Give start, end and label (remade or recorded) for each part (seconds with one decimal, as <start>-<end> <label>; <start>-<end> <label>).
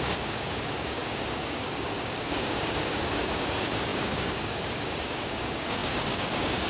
0.0-6.7 remade